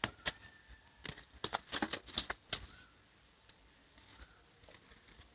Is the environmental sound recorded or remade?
recorded